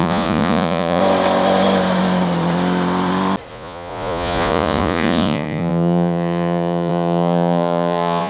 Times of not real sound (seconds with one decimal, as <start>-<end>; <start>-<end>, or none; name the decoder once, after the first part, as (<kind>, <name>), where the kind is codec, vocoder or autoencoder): 0.0-1.0 (vocoder, Vocos); 3.5-8.3